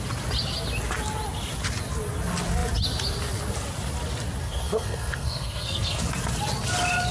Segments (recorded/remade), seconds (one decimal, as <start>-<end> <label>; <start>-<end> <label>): 0.0-4.4 recorded; 4.4-6.0 remade; 6.0-7.1 recorded